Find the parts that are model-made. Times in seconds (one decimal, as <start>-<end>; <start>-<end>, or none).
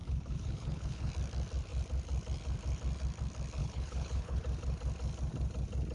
0.0-1.1; 3.6-4.4